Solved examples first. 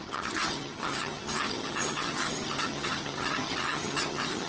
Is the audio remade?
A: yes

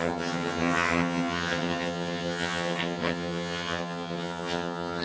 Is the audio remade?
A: yes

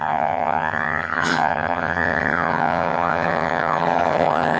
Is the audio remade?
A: yes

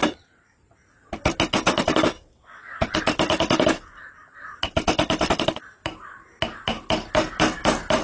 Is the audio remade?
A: no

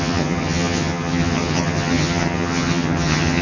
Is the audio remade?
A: yes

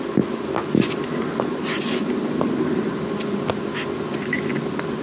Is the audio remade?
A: no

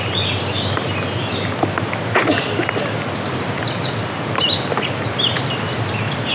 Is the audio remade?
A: no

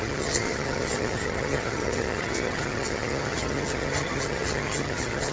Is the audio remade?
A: yes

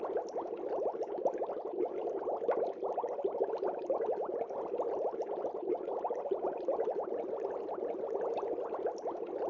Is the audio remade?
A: no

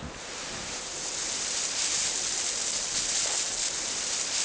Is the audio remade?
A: no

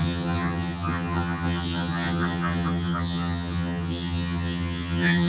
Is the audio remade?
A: yes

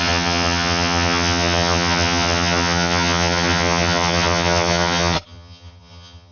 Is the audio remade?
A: yes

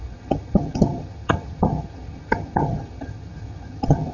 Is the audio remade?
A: yes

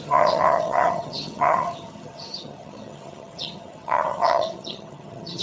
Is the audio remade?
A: yes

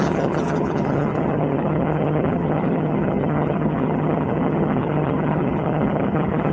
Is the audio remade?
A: yes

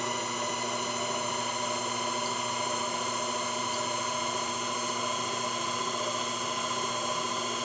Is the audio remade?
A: no